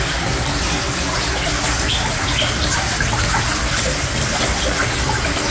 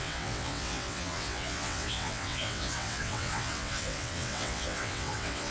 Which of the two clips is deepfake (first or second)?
second